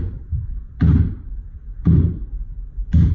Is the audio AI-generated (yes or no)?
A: yes